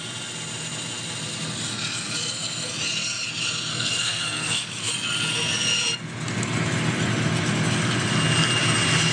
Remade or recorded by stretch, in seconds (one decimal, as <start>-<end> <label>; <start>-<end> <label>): 0.0-3.7 recorded; 3.7-4.9 remade; 4.9-9.1 recorded